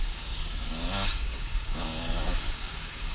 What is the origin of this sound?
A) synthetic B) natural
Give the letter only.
A